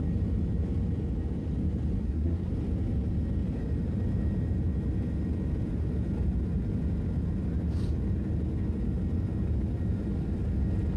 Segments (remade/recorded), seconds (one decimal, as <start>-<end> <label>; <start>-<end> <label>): 0.0-2.0 recorded; 2.0-2.5 remade; 2.5-11.0 recorded